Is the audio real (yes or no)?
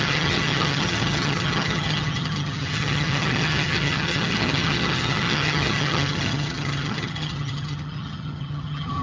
no